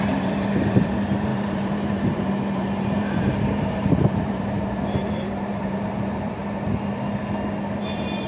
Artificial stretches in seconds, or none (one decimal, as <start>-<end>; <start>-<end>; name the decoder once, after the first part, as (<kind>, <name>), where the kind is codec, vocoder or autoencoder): 0.0-6.4 (vocoder, BigVGAN v2); 7.8-8.3